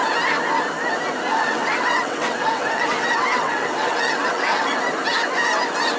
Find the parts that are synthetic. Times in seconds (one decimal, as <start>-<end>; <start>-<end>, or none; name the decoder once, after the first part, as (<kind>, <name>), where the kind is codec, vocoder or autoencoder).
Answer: 1.3-4.8 (vocoder, WaveNeXt)